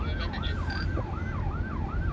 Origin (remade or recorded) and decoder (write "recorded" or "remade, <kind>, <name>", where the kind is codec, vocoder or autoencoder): recorded